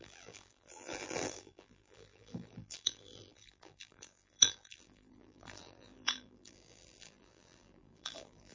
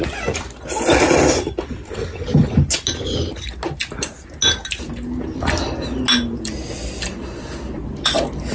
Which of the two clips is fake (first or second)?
first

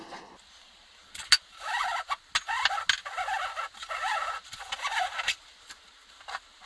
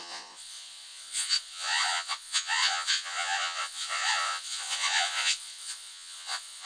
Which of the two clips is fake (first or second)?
second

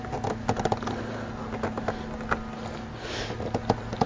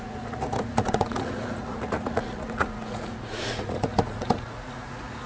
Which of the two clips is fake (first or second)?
second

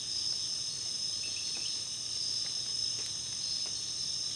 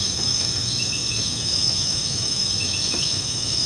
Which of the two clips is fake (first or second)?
second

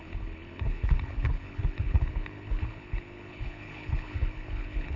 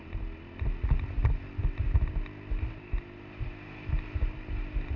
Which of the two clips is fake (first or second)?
first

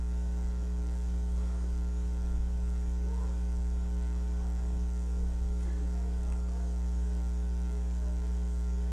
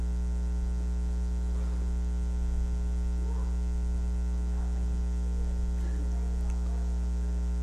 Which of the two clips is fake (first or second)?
first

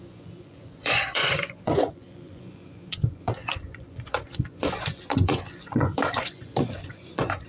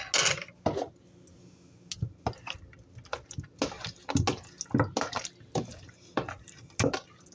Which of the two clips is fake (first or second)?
first